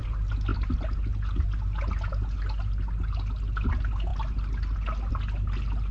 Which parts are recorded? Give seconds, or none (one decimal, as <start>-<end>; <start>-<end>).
0.0-5.9